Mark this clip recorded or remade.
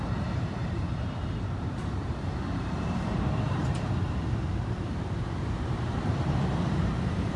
remade